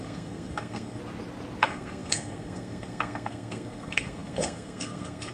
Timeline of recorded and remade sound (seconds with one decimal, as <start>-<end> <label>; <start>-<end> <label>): 0.0-1.0 remade; 1.0-1.6 recorded; 1.6-5.3 remade